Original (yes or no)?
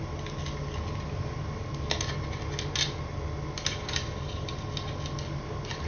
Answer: yes